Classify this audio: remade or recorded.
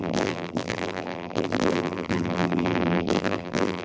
remade